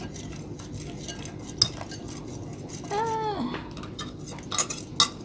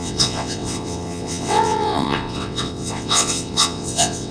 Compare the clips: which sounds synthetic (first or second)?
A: second